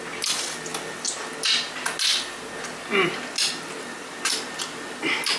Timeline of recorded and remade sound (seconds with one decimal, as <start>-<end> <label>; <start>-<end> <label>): 0.0-5.4 recorded